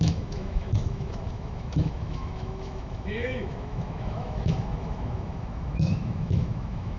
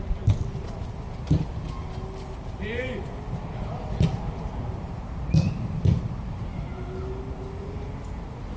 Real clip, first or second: second